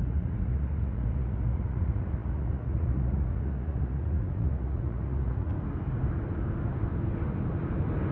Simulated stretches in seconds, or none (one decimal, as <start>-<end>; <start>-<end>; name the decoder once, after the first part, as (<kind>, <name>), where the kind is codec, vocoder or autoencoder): 0.0-5.5 (vocoder, Vocos)